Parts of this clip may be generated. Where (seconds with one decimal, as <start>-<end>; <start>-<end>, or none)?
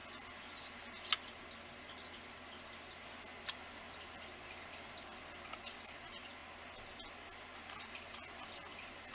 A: none